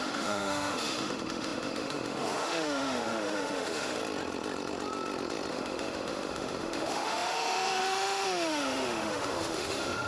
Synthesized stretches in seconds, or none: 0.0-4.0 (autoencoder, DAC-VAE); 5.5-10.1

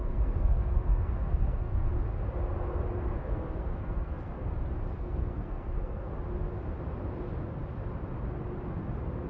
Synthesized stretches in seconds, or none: 0.0-1.9 (codec, SNAC); 3.2-4.5; 5.0-6.1

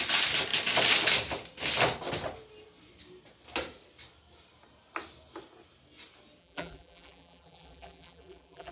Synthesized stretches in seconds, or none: 6.4-8.7 (vocoder, BigVGAN v2)